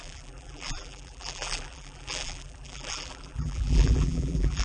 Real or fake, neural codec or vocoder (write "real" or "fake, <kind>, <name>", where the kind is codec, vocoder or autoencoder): fake, vocoder, BigVGAN v2